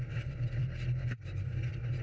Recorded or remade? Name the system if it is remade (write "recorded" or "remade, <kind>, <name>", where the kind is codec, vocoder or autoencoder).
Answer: remade, vocoder, BigVGAN v2